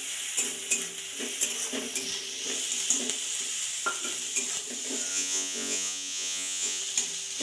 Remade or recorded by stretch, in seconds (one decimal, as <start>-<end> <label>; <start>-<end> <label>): 0.0-5.1 recorded; 5.1-6.8 remade; 6.8-7.4 recorded